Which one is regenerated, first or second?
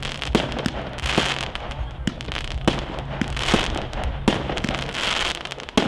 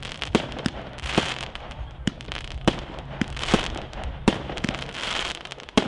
second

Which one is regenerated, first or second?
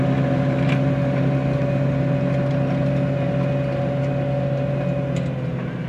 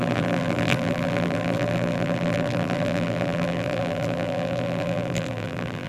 second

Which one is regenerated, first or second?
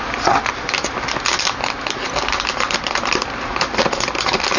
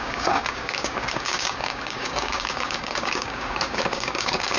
second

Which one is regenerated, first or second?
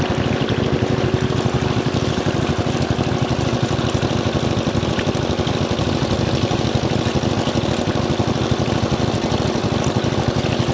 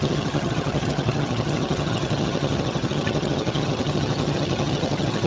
second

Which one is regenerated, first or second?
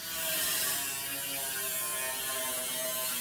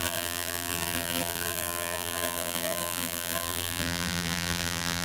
second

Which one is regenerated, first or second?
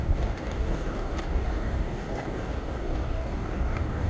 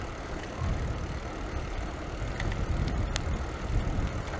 first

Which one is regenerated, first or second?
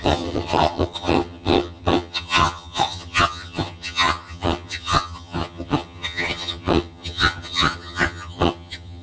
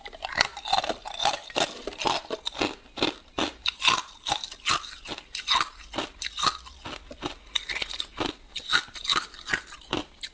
first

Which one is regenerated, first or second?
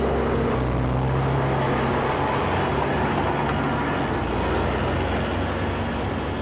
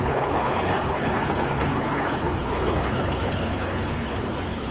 second